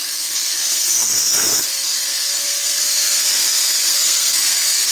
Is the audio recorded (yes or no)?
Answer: no